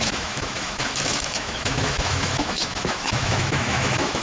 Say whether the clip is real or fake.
fake